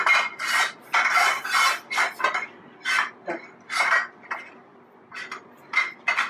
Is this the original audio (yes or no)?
yes